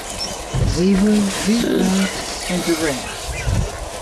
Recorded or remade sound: recorded